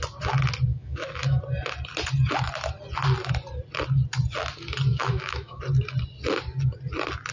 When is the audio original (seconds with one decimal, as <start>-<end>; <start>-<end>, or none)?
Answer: 0.0-0.7; 1.4-4.9; 5.6-7.3